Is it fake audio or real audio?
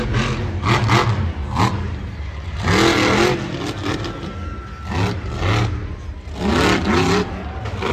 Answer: real